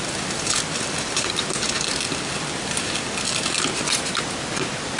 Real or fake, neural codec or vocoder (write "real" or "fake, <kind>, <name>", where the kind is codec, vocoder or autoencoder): real